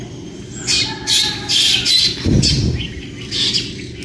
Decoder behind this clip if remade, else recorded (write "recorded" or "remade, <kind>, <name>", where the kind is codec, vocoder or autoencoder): recorded